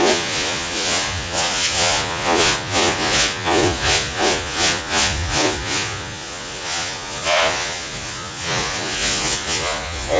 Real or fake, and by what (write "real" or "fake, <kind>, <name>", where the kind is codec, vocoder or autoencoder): fake, vocoder, Vocos